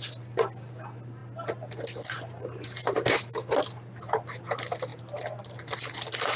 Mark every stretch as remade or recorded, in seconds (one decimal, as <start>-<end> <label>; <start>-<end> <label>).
0.0-6.4 recorded